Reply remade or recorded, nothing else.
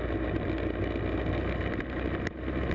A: recorded